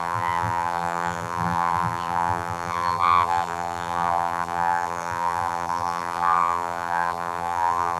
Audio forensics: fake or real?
fake